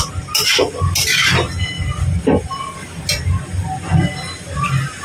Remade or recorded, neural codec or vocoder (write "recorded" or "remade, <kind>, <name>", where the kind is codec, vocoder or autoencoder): recorded